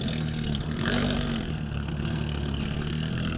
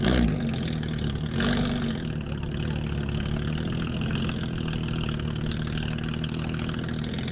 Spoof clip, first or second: first